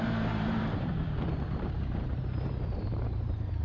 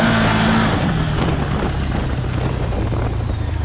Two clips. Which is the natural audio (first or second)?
second